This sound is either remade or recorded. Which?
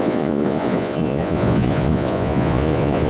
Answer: remade